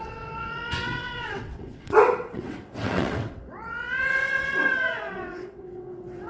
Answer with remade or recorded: remade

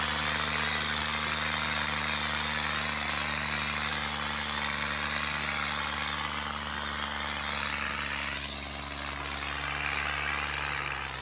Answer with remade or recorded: recorded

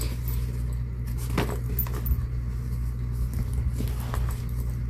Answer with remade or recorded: recorded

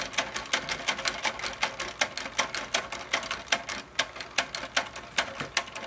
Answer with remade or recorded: recorded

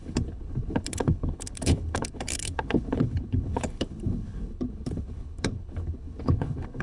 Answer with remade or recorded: remade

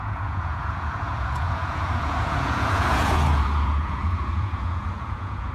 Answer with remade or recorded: remade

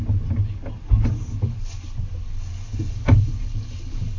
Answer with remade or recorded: recorded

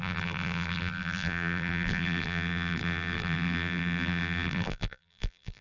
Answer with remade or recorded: remade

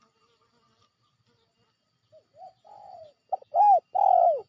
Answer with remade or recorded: recorded